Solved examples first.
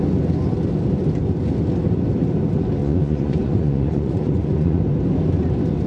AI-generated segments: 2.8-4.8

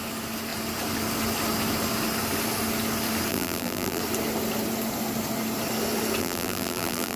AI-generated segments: 3.3-4.0; 6.2-7.2